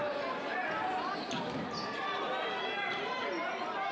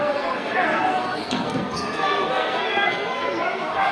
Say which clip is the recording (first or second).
first